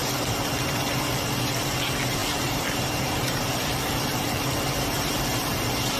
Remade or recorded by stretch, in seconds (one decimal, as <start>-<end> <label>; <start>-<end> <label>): 0.0-0.9 recorded; 0.9-6.0 remade

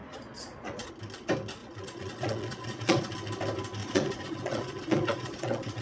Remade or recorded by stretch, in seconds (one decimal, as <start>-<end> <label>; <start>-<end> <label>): 0.0-0.9 remade; 0.9-1.6 recorded; 1.6-3.1 remade; 3.1-3.8 recorded; 3.8-5.8 remade

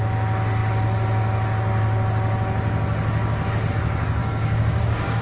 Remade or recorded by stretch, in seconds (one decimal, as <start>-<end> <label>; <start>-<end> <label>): 0.0-4.2 recorded; 4.2-5.2 remade

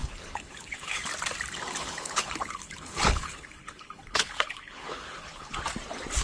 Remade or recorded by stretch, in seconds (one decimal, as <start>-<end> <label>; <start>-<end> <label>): 0.0-1.0 remade; 1.0-1.8 recorded; 1.8-5.5 remade; 5.5-6.2 recorded

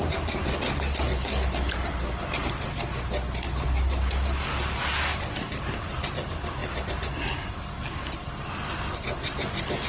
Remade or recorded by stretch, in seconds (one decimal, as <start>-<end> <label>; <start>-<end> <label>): 0.0-9.9 recorded